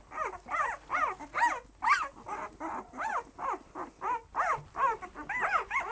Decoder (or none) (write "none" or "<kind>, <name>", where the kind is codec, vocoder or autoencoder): none